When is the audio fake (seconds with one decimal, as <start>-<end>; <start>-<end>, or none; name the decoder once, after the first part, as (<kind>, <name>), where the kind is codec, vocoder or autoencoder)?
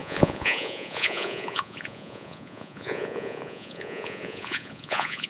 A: 0.0-5.3 (vocoder, Vocos)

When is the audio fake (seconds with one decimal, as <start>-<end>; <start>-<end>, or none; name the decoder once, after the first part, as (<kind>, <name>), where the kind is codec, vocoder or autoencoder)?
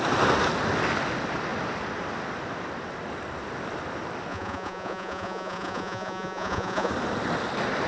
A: 4.3-6.9 (vocoder, Vocos)